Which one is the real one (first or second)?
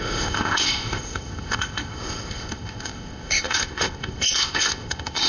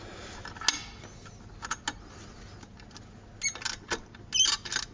second